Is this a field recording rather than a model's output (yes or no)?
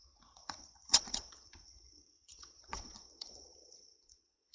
no